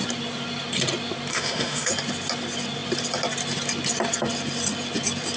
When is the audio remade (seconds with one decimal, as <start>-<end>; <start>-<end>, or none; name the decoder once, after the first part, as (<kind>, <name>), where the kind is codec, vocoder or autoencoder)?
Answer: 1.3-1.9 (autoencoder, DAC-VAE)